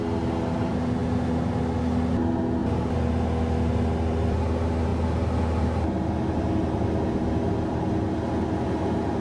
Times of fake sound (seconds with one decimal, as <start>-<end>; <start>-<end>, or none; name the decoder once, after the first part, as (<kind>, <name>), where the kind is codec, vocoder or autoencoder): 2.6-3.1 (vocoder, BigVGAN v2)